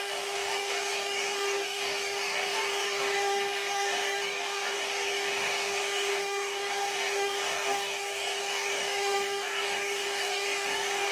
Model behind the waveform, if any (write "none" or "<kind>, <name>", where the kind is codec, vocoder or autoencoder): codec, DAC